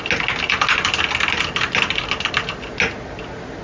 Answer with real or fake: real